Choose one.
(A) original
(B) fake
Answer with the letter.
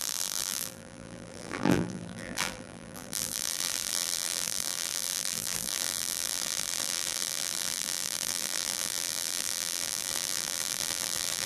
B